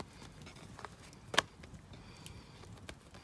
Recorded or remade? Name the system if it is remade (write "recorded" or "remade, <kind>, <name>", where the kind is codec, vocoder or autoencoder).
recorded